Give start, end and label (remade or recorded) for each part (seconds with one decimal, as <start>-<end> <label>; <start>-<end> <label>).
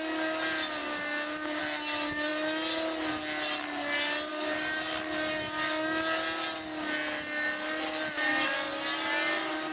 0.0-0.8 recorded; 0.8-1.6 remade; 1.6-4.3 recorded; 4.3-4.8 remade; 4.8-9.7 recorded